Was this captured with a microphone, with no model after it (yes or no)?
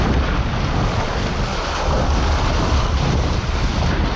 yes